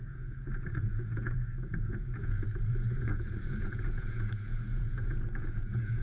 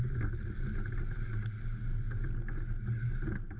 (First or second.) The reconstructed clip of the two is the first